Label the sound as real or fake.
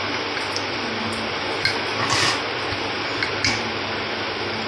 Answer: real